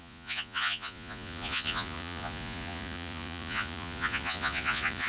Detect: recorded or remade remade